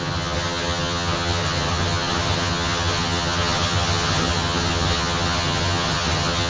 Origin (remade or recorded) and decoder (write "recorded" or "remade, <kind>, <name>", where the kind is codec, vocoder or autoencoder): remade, vocoder, HiFi-GAN